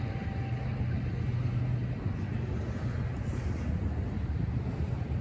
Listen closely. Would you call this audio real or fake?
real